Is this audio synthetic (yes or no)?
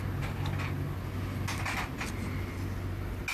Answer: no